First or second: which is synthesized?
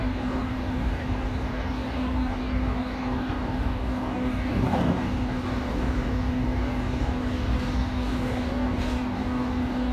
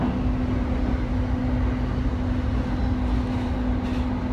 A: first